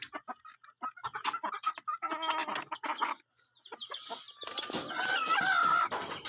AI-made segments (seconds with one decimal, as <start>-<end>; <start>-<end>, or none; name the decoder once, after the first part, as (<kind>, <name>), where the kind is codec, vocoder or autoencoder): none